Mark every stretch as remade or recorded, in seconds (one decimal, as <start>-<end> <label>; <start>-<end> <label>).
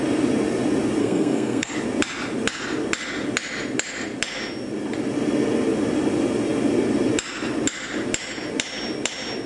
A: 0.0-1.0 recorded; 1.0-1.7 remade; 1.7-9.5 recorded